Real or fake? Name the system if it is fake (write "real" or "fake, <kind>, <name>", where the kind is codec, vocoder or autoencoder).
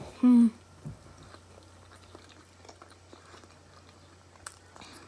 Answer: real